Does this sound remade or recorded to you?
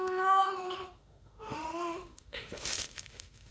remade